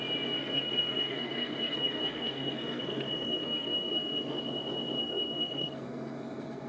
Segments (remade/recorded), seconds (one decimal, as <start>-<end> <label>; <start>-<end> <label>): 0.0-0.4 recorded; 0.4-4.4 remade; 4.4-5.0 recorded; 5.0-6.7 remade